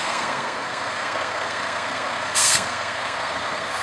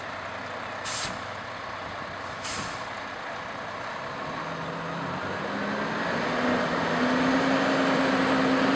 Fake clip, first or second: first